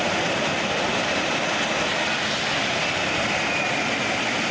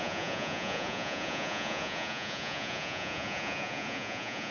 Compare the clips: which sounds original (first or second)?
first